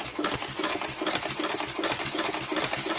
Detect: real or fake real